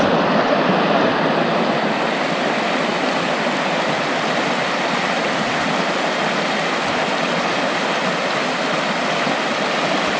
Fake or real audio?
real